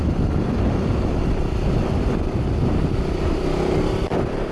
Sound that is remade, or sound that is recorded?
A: recorded